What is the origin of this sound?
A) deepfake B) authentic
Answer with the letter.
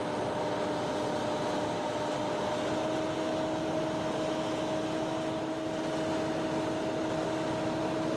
B